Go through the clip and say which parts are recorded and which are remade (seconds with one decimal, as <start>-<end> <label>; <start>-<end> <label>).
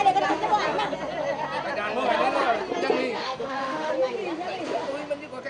0.0-3.2 recorded; 3.2-3.9 remade; 3.9-5.5 recorded